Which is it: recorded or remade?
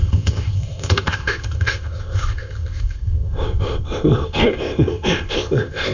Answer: remade